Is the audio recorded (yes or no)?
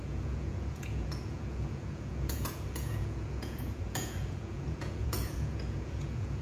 no